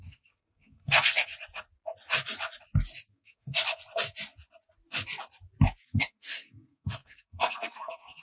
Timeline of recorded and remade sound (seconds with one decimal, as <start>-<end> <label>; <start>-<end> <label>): 0.0-1.3 remade; 1.3-3.1 recorded; 3.1-3.5 remade; 3.5-5.8 recorded; 5.8-8.2 remade